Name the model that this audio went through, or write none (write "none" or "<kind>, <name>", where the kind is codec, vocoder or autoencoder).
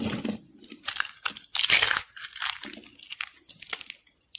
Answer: none